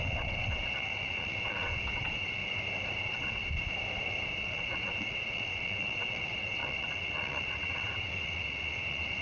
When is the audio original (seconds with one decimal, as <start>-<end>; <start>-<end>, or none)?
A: 2.4-3.0; 3.4-4.4